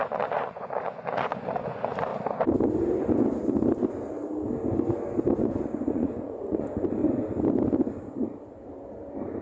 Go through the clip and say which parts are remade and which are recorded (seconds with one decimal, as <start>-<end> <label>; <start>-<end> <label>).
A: 0.0-2.1 remade; 2.1-5.4 recorded; 5.4-7.0 remade; 7.0-9.4 recorded